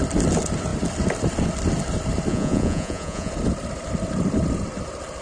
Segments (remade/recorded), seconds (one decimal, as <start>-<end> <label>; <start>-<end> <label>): 0.0-2.3 recorded; 2.3-3.3 remade; 3.3-5.2 recorded